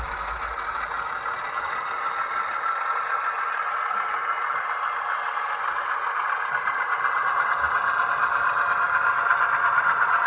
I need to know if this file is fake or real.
real